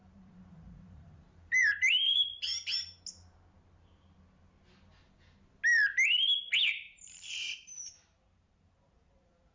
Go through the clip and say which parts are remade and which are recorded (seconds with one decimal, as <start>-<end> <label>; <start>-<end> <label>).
0.0-2.5 remade; 2.5-6.6 recorded; 6.6-9.5 remade